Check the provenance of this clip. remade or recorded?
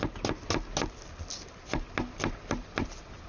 recorded